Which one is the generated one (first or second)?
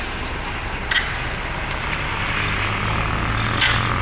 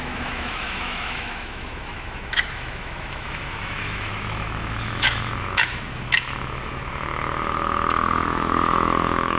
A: second